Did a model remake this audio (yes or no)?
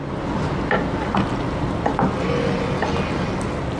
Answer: no